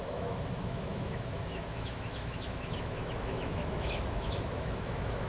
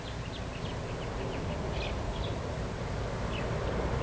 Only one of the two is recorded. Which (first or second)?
second